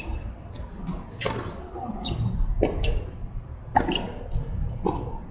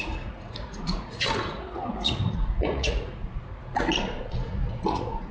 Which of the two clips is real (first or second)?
first